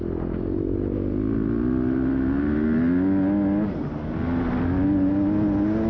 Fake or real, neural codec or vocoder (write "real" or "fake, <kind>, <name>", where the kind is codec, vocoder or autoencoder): real